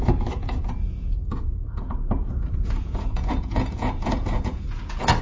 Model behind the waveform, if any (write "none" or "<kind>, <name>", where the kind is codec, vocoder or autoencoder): vocoder, Vocos